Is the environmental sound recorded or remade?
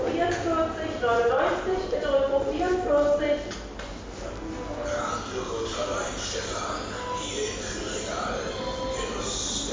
recorded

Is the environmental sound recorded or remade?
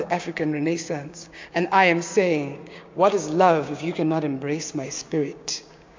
remade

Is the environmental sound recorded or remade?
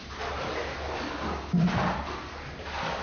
recorded